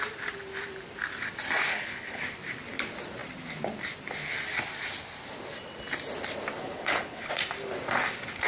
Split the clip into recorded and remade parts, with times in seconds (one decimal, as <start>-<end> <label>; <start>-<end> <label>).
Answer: 0.0-1.7 recorded; 1.7-2.2 remade; 2.2-6.6 recorded; 6.6-7.3 remade; 7.3-8.5 recorded